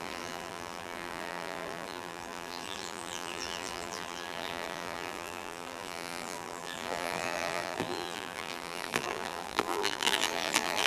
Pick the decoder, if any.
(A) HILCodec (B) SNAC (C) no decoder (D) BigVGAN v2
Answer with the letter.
D